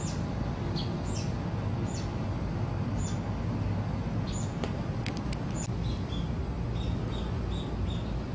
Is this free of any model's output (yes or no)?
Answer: yes